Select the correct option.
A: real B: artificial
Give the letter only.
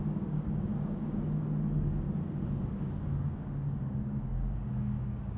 B